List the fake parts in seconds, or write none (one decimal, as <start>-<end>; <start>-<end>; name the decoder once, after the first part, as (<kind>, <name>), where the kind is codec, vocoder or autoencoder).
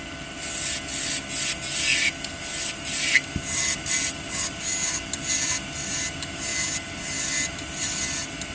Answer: none